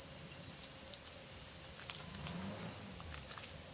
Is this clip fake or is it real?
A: real